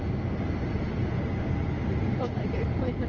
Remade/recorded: recorded